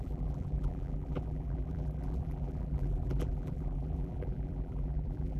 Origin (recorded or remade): remade